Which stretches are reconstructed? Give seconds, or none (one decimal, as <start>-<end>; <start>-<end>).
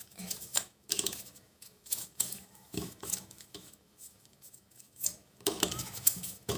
0.0-6.6